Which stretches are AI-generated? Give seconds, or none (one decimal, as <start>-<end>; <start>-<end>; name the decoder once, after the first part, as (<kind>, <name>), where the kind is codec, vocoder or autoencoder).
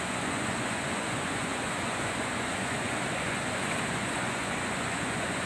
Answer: 0.0-5.5 (vocoder, Vocos)